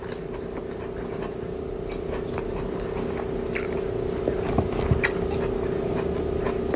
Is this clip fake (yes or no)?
no